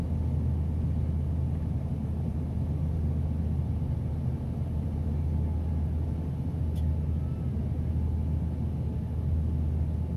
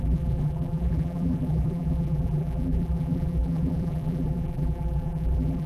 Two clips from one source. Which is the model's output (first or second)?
second